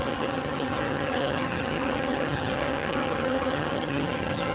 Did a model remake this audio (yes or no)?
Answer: yes